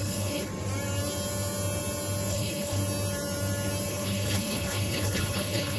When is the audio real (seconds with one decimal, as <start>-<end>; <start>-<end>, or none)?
0.5-2.3; 2.8-3.9